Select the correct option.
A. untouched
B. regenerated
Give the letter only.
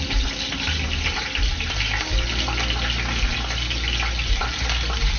A